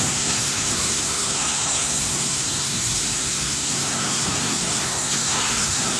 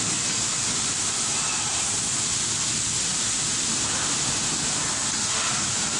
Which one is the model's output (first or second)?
first